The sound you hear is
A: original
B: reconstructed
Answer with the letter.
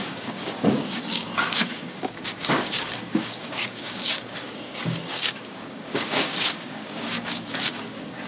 B